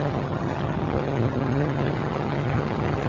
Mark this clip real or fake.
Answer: fake